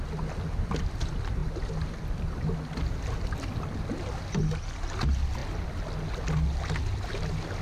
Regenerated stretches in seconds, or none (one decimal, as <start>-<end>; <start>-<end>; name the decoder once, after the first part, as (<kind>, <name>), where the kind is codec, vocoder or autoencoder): none

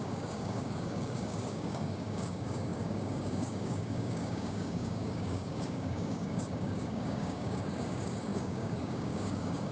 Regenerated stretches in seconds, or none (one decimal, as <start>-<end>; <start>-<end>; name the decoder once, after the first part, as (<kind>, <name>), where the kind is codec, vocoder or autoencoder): 0.0-9.7 (codec, DAC)

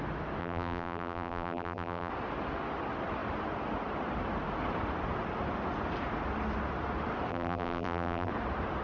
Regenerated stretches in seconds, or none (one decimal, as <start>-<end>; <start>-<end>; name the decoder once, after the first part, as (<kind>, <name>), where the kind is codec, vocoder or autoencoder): 0.4-2.1 (vocoder, BigVGAN v2); 7.3-8.3